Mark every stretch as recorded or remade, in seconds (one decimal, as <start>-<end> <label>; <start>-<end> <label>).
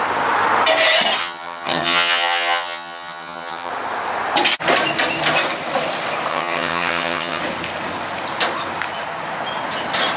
0.0-1.2 recorded; 1.2-3.7 remade; 3.7-6.3 recorded; 6.3-7.4 remade; 7.4-10.2 recorded